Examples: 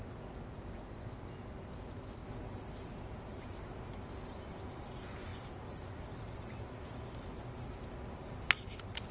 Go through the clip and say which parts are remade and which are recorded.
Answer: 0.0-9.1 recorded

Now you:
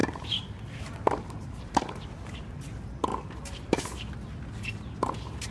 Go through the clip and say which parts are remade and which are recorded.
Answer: 0.0-5.5 recorded

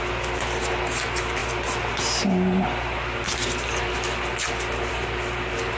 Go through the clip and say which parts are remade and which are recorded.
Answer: 0.0-5.8 recorded

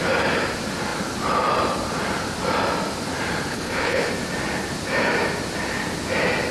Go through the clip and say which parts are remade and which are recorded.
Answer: 0.0-3.5 recorded; 3.5-4.1 remade; 4.1-6.5 recorded

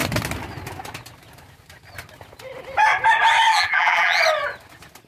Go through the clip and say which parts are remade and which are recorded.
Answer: 0.0-3.5 recorded; 3.5-4.2 remade; 4.2-5.1 recorded

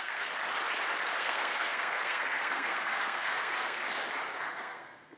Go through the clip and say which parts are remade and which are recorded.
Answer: 0.0-0.4 remade; 0.4-1.2 recorded; 1.2-3.8 remade; 3.8-4.5 recorded; 4.5-5.2 remade

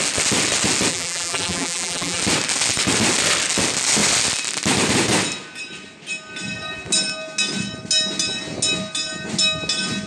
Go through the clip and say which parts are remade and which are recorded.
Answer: 0.0-0.9 recorded; 0.9-2.2 remade; 2.2-10.1 recorded